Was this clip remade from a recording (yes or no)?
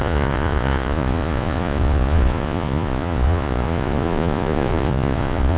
yes